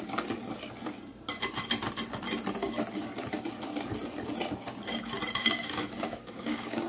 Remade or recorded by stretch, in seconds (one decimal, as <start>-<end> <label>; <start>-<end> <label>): 0.0-5.4 recorded; 5.4-6.9 remade